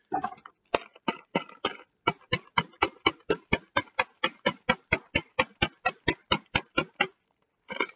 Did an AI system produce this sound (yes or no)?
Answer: no